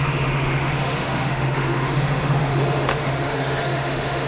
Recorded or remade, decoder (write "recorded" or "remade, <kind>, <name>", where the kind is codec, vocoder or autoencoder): remade, autoencoder, DAC-VAE